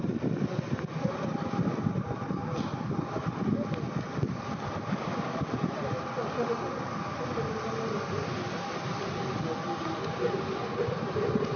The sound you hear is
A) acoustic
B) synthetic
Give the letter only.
A